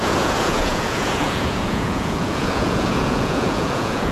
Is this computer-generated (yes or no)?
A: yes